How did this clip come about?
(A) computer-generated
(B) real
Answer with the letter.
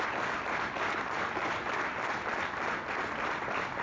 B